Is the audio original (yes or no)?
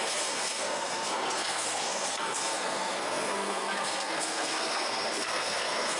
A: no